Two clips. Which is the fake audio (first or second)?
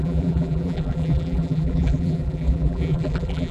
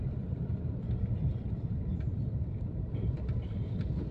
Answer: first